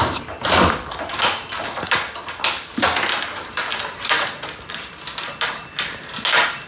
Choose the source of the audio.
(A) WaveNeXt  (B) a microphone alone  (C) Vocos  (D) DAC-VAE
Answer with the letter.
B